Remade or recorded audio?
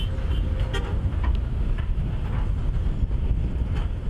recorded